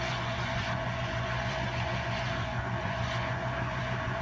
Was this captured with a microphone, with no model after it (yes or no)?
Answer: no